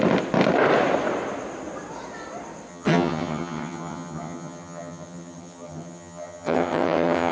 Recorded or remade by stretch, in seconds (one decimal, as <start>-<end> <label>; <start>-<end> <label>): 0.0-2.7 recorded; 2.7-7.3 remade